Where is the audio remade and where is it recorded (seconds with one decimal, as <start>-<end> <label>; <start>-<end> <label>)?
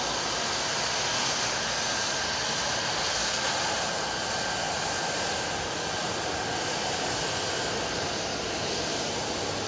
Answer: 0.0-9.7 recorded